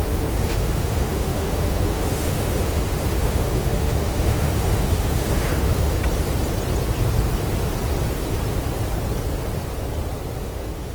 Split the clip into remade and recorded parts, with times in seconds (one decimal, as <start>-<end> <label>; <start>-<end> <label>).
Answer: 0.0-6.0 remade; 6.0-10.4 recorded; 10.4-10.9 remade